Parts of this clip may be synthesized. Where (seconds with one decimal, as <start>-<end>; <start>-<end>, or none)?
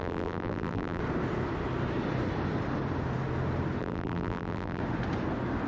0.0-1.0; 3.8-4.8